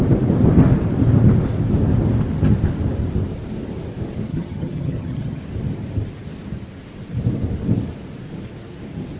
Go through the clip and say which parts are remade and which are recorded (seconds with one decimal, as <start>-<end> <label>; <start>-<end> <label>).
0.0-4.3 recorded; 4.3-5.4 remade; 5.4-9.2 recorded

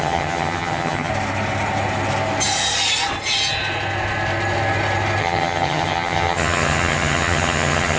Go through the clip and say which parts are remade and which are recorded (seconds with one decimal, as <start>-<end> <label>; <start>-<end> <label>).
0.0-1.1 remade; 1.1-5.2 recorded; 5.2-8.0 remade